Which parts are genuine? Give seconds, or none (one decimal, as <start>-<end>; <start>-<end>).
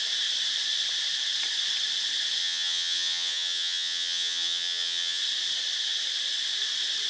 0.0-2.4; 5.2-7.1